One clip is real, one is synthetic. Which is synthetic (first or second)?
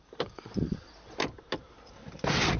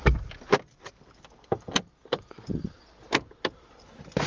first